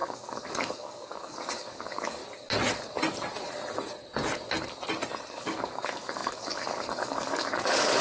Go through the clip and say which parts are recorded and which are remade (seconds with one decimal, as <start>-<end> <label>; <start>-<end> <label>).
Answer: 0.0-2.2 remade; 2.2-5.3 recorded; 5.3-8.0 remade